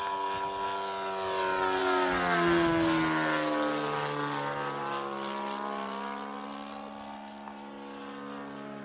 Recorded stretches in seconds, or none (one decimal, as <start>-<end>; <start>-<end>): 0.0-8.8